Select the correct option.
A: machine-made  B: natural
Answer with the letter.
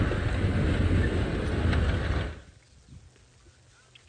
B